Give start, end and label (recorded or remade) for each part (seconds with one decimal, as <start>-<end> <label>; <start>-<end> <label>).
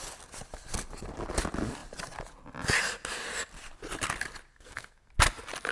0.0-4.5 recorded; 4.5-5.1 remade; 5.1-5.7 recorded